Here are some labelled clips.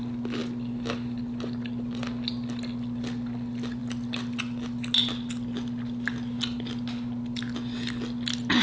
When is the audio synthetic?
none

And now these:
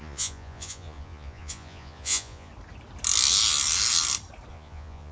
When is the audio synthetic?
0.0-2.5; 4.5-5.1

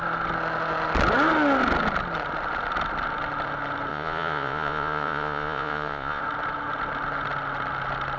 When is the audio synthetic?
3.9-6.2